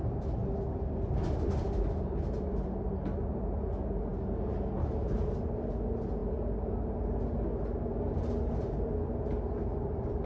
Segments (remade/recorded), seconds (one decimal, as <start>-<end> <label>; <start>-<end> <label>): 0.0-10.3 recorded